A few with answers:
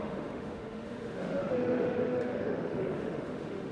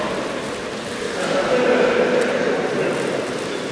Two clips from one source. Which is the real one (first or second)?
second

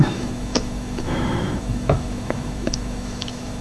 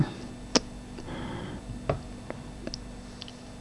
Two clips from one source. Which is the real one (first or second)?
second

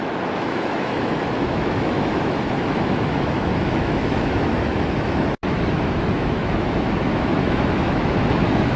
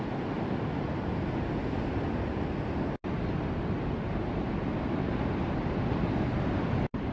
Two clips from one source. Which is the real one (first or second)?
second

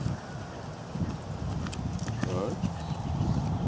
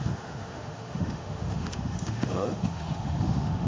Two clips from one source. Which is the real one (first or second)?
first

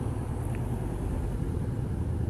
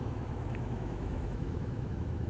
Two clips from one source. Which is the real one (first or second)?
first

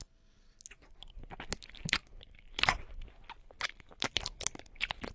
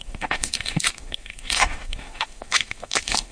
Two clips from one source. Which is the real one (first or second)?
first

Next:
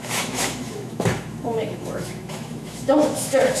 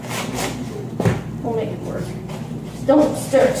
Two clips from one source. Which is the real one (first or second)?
second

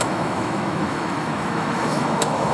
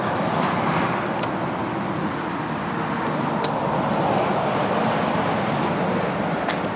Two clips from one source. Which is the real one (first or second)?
second